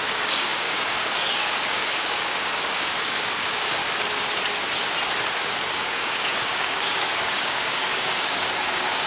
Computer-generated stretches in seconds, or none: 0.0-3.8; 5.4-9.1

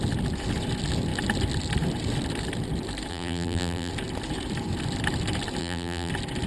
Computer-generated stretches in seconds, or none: 3.1-3.9; 5.6-6.1

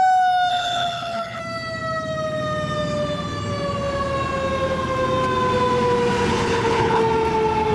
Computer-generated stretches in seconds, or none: 0.5-1.4; 6.3-7.0

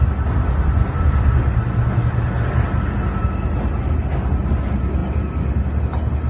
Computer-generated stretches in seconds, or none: none

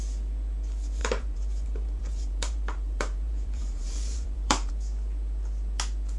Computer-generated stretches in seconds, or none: 1.0-4.7

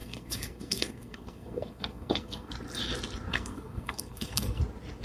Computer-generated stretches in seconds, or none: 0.0-2.5; 3.3-4.6